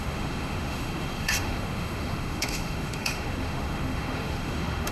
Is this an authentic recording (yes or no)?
no